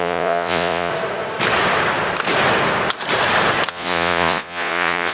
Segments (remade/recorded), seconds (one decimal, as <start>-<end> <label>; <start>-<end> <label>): 0.0-0.9 remade; 0.9-3.7 recorded; 3.7-5.1 remade